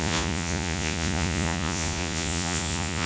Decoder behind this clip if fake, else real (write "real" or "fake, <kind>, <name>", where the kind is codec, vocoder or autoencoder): fake, vocoder, Vocos